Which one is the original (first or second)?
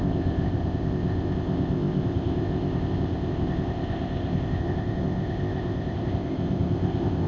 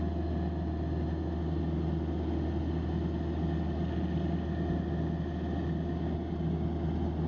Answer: second